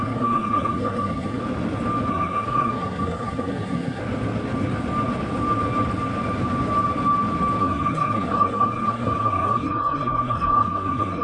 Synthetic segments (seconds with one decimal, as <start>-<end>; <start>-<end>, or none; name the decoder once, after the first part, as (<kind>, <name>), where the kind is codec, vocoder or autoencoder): 0.0-1.4 (codec, SNAC); 2.1-4.0; 7.6-11.2

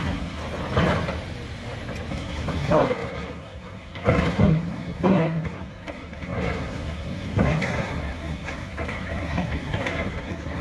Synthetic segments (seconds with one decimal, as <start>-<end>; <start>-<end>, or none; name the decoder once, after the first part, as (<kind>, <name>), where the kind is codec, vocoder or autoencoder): 0.0-0.4 (codec, SNAC); 2.1-10.6

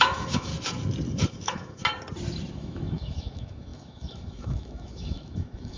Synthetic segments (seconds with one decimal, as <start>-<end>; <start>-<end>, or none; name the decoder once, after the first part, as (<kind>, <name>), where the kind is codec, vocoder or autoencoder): 0.0-0.5 (autoencoder, DAC-VAE); 1.3-1.8; 2.5-5.8

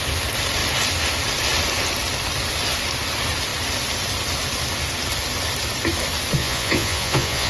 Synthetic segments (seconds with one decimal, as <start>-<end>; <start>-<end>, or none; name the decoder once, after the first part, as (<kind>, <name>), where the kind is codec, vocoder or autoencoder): 6.4-7.5 (vocoder, Vocos)

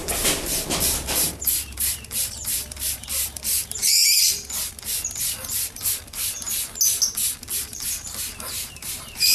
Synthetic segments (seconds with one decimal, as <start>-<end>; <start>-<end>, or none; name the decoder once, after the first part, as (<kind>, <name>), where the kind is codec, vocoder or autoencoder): 0.0-4.0 (vocoder, BigVGAN v2); 7.6-9.3